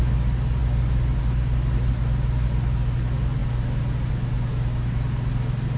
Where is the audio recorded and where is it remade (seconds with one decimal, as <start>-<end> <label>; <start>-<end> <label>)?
0.0-5.8 recorded